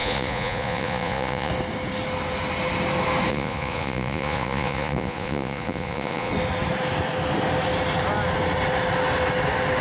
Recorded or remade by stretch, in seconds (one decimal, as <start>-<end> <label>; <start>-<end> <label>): 0.0-1.5 remade; 1.5-3.3 recorded; 3.3-6.3 remade; 6.3-9.8 recorded